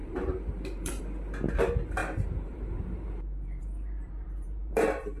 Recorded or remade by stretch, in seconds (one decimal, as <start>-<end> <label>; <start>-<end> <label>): 0.0-1.0 remade; 1.0-2.0 recorded; 2.0-5.2 remade